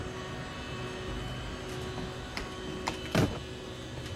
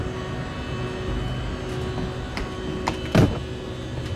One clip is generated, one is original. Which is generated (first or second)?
first